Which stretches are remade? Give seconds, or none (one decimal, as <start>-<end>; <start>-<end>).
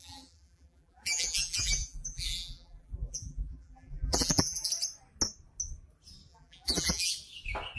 0.0-4.7; 6.3-7.1